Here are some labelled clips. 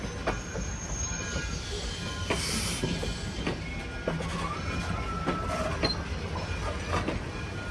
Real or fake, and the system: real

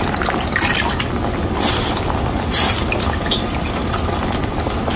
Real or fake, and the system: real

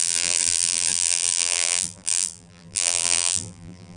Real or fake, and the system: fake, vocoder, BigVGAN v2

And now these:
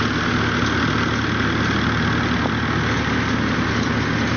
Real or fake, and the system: real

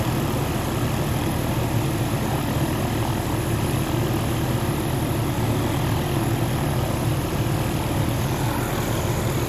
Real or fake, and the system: real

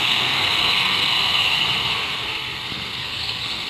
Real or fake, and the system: fake, codec, SNAC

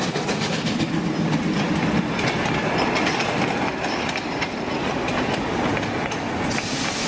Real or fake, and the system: real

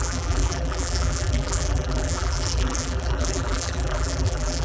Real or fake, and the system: fake, vocoder, BigVGAN v2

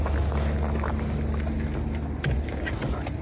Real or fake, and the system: real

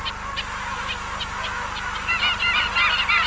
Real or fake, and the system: real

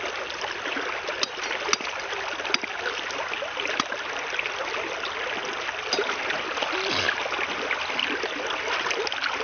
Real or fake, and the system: real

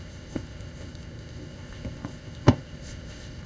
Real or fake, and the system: fake, codec, ZipCodec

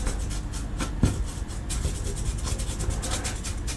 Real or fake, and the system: real